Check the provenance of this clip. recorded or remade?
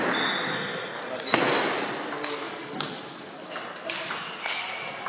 recorded